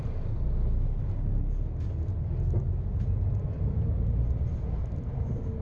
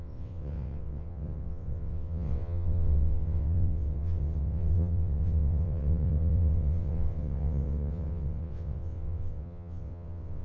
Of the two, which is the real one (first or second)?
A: first